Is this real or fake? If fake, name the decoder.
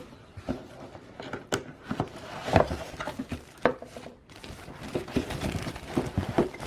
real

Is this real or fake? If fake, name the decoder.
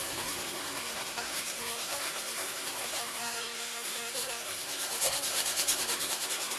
fake, codec, SNAC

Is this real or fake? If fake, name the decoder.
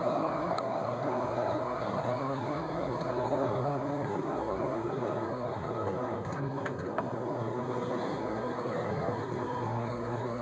fake, codec, SNAC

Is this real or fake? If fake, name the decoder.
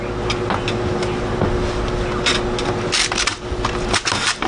real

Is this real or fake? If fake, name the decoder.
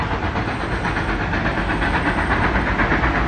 real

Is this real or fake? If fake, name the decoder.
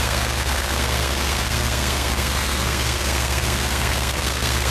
fake, codec, SNAC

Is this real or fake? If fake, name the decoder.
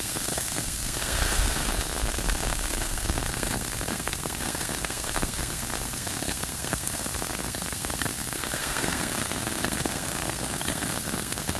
fake, codec, SNAC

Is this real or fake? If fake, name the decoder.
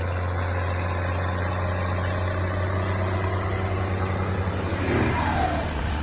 real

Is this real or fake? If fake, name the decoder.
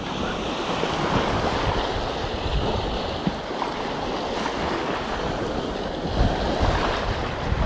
real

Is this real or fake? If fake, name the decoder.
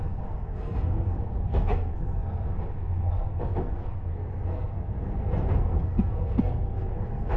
fake, codec, SNAC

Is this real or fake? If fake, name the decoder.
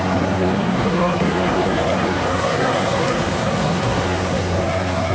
fake, codec, SNAC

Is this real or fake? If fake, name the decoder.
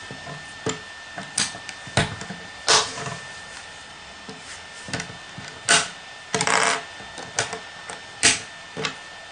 real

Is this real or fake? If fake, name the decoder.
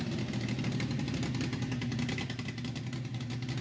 real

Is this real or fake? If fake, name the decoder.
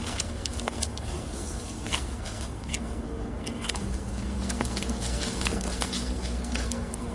fake, codec, SNAC